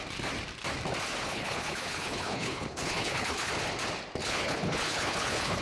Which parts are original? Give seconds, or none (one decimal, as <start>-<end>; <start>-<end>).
0.0-1.3; 3.5-4.2